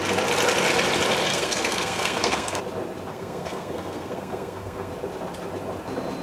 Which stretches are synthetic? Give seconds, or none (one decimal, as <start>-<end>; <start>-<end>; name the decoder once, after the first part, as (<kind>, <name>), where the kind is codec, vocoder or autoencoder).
1.3-2.6 (codec, SNAC); 3.1-4.9